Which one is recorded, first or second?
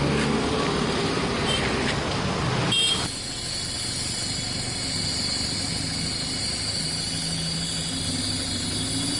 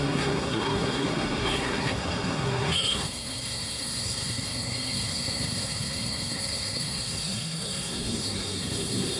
first